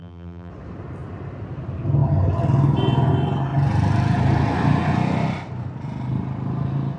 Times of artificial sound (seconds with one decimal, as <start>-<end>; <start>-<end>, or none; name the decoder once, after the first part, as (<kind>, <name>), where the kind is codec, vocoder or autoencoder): 0.0-0.5 (vocoder, BigVGAN v2)